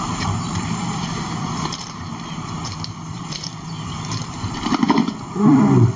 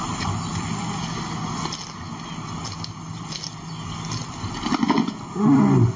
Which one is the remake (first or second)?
first